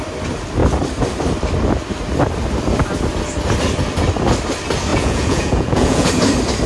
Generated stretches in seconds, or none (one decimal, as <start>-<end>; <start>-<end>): 4.9-6.1